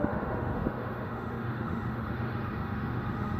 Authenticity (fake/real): fake